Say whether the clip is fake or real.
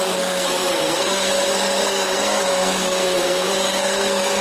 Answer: fake